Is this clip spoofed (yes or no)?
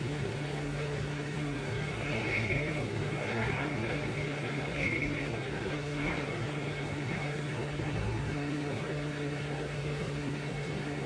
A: yes